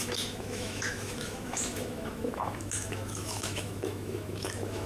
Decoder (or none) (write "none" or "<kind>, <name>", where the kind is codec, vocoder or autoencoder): autoencoder, DAC-VAE